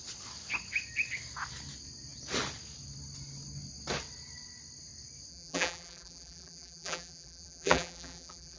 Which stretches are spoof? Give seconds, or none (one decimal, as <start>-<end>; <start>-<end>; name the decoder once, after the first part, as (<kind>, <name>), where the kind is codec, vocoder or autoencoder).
5.3-8.6 (vocoder, BigVGAN v2)